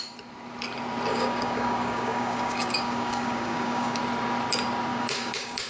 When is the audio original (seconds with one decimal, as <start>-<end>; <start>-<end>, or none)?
0.0-1.1; 4.0-4.9